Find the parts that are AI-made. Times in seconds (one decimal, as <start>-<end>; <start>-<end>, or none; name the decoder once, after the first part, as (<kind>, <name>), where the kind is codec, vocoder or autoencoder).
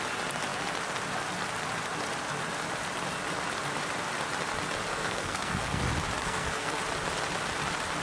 4.9-5.8 (codec, SNAC); 6.2-6.8